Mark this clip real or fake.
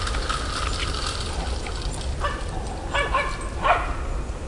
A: real